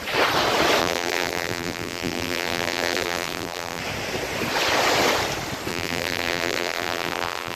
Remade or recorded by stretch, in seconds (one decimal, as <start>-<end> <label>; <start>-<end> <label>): 0.0-0.8 recorded; 0.8-3.8 remade; 3.8-5.7 recorded; 5.7-7.6 remade